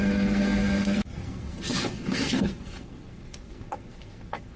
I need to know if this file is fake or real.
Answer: fake